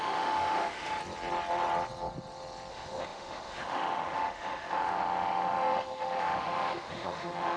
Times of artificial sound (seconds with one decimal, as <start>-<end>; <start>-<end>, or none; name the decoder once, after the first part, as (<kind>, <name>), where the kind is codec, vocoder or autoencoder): 0.0-1.0 (autoencoder, DAC-VAE); 2.7-7.6